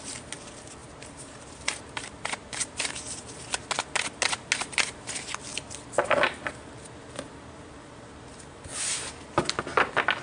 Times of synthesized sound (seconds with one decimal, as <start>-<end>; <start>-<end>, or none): 0.8-2.9